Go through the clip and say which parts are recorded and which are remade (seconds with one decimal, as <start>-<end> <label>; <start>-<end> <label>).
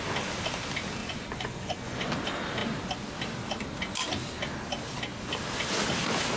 0.0-1.0 recorded; 1.0-2.1 remade; 2.1-6.4 recorded